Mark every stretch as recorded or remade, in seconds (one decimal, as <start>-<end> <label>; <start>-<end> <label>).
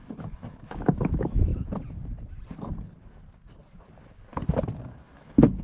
0.0-1.5 remade; 1.5-4.9 recorded; 4.9-5.6 remade